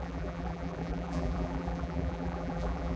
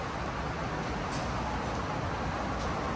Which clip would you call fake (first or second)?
first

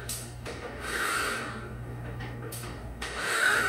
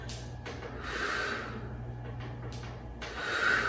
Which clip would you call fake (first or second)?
first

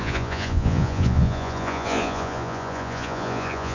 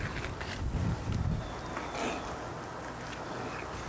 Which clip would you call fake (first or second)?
first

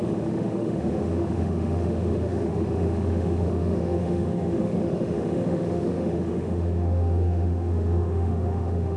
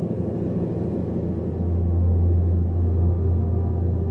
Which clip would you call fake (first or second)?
first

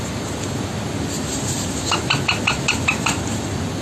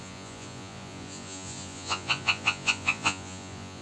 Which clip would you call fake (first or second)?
second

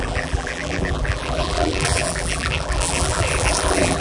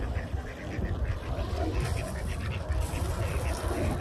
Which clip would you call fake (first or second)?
first